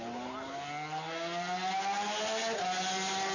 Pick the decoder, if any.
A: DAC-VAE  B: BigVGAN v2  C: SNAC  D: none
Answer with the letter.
D